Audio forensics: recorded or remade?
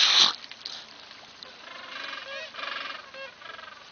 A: recorded